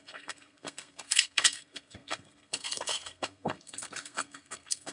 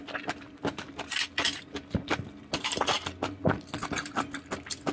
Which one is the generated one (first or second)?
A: first